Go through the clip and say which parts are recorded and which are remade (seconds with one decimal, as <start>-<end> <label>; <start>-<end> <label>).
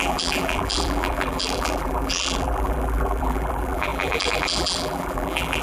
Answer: 0.0-5.6 remade